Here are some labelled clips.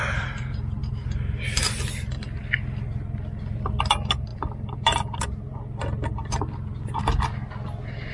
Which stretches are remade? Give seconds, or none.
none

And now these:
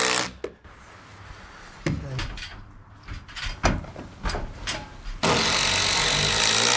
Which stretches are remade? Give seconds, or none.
none

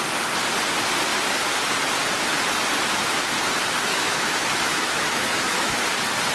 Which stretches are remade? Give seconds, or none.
3.9-5.8 (autoencoder, DAC-VAE)

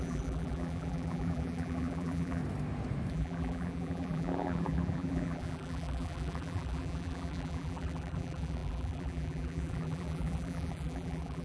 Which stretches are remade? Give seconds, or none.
0.0-2.4 (vocoder, BigVGAN v2); 3.1-11.4